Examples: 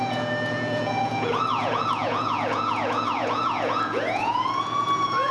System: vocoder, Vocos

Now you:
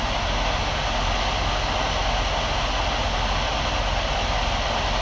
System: none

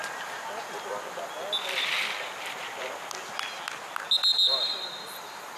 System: none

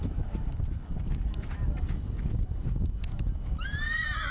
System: none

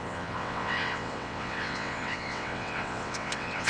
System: vocoder, WaveNeXt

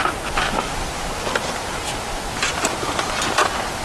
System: none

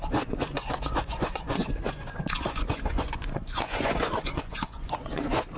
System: vocoder, Vocos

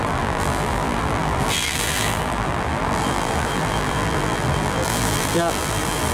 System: vocoder, BigVGAN v2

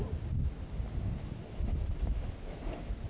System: none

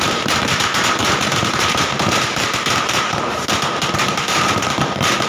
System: vocoder, BigVGAN v2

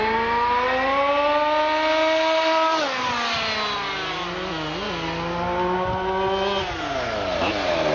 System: none